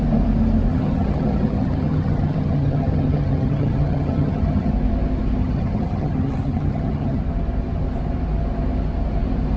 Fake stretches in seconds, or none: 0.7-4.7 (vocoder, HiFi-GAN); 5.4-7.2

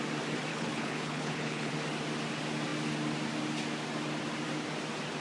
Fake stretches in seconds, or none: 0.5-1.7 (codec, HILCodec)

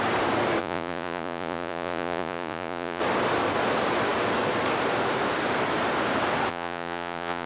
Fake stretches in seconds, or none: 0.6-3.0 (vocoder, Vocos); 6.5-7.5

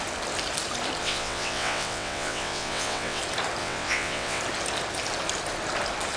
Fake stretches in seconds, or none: 1.0-3.2 (vocoder, WaveNeXt); 3.6-4.4

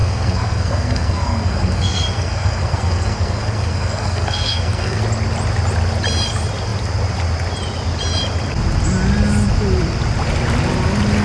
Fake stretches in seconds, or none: 0.0-5.0 (codec, SNAC)

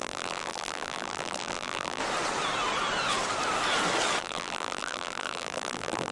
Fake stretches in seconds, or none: 0.0-2.0 (vocoder, BigVGAN v2); 4.2-6.1